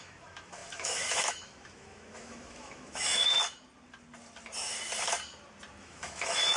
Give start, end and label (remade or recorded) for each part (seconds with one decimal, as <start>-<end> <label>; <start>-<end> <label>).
0.0-3.2 remade; 3.2-5.8 recorded; 5.8-6.6 remade

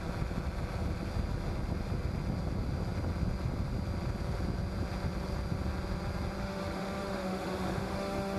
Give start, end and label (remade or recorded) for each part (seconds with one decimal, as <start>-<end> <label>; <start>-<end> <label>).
0.0-6.4 recorded; 6.4-8.4 remade